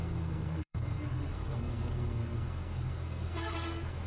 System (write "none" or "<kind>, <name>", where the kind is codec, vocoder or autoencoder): codec, SNAC